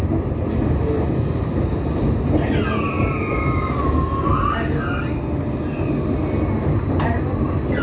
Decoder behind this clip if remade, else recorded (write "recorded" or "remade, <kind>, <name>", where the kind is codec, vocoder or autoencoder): recorded